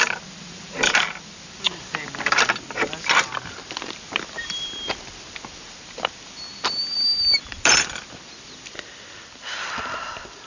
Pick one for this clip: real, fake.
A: fake